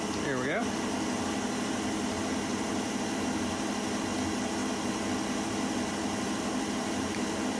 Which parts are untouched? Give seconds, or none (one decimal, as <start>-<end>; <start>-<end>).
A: 0.0-7.6